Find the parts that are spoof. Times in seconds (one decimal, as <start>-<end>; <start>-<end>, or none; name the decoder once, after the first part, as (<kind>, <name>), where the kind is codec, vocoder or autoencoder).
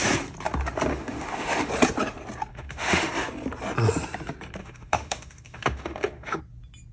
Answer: 0.9-1.7 (autoencoder, DAC-VAE); 2.5-3.1; 4.6-6.4